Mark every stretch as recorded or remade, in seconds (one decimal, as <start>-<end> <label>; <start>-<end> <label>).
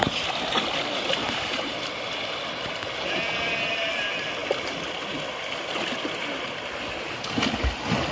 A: 0.0-8.1 recorded